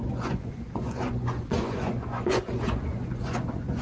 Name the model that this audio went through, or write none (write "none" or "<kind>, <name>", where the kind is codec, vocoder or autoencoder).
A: vocoder, Vocos